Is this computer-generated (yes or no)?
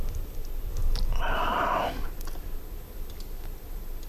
no